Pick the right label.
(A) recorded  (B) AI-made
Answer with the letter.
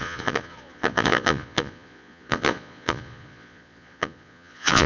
B